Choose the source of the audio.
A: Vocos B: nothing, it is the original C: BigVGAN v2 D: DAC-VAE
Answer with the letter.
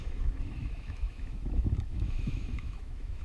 D